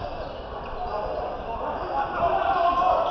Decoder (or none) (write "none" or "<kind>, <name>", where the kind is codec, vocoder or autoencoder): none